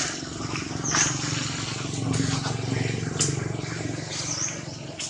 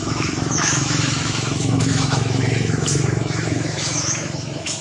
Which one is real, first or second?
first